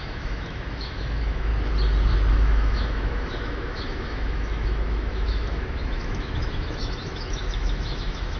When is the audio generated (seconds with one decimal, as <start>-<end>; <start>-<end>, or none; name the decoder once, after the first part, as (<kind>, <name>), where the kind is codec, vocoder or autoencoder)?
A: 0.0-1.5 (autoencoder, DAC-VAE); 2.3-8.4